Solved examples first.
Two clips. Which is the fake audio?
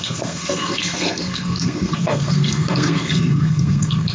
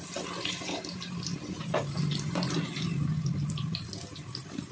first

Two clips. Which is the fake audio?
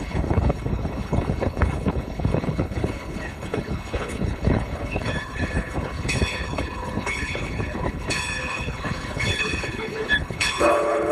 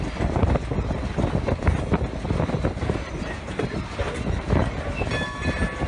first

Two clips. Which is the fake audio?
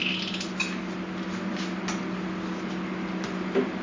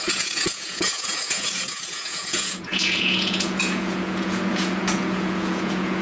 second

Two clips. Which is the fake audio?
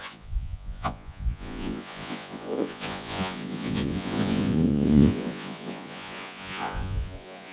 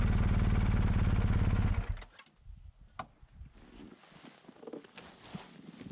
first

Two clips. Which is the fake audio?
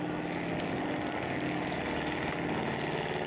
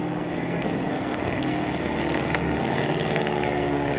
second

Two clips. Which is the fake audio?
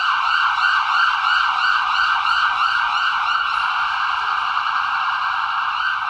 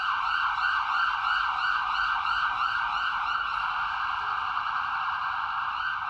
first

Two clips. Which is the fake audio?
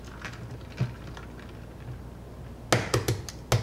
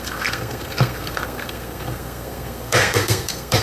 second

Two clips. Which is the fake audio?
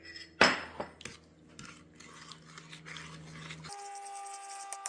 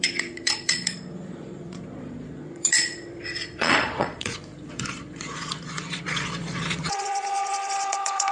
second